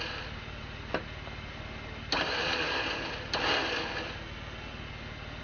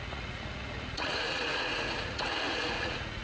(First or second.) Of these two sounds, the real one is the first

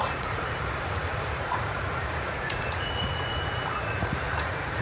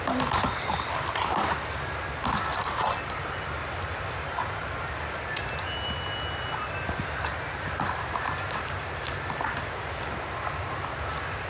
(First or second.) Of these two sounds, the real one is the second